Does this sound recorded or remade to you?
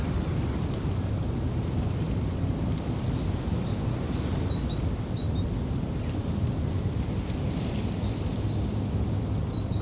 recorded